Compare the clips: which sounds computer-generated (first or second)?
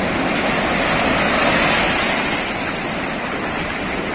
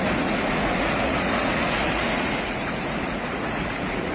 second